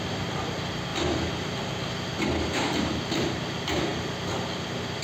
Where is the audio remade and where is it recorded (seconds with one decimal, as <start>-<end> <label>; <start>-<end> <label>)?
0.0-5.0 recorded